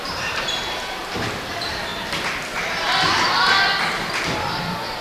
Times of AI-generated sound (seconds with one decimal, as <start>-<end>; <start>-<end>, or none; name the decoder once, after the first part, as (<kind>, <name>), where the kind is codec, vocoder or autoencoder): 0.0-1.9 (vocoder, BigVGAN v2)